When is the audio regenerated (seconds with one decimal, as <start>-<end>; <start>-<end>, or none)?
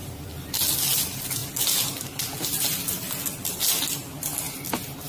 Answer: 0.0-0.5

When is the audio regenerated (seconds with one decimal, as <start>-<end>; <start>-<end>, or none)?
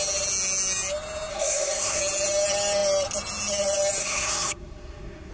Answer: 1.3-2.0; 4.0-5.3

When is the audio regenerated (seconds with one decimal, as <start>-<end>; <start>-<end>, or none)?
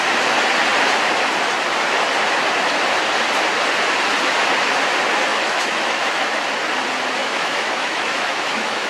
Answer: 5.3-6.2; 7.2-8.9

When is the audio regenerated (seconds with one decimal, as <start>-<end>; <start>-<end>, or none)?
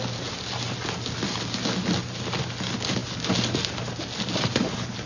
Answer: none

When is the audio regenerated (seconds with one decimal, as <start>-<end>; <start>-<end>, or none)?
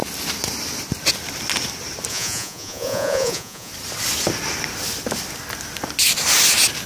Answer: 2.1-3.7